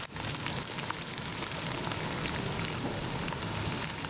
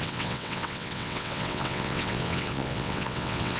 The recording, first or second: first